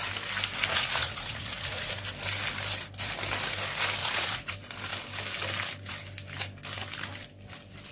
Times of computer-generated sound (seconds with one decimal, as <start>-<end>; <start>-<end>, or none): 0.7-1.9; 4.0-4.5